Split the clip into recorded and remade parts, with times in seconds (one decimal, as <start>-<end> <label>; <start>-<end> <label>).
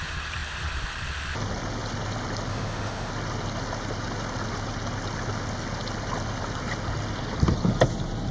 0.0-2.5 recorded; 2.5-3.1 remade; 3.1-8.3 recorded